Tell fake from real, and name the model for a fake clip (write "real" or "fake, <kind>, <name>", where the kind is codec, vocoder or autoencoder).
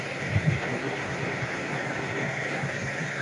fake, codec, SNAC